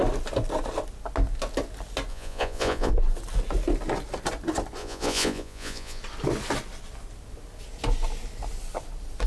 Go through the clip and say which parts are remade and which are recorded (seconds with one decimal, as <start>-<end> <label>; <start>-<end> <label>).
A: 0.0-2.1 recorded; 2.1-2.9 remade; 2.9-4.8 recorded; 4.8-6.0 remade; 6.0-9.3 recorded